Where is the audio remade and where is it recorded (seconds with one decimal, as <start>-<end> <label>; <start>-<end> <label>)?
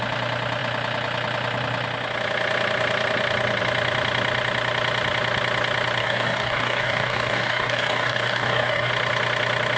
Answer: 0.0-6.0 recorded; 6.0-8.9 remade; 8.9-9.8 recorded